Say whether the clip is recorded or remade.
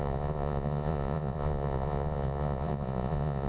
remade